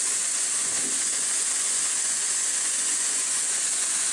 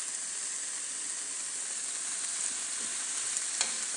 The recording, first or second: second